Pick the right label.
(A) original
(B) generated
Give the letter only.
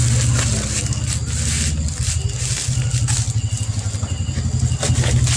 A